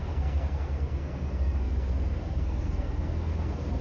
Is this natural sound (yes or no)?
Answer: no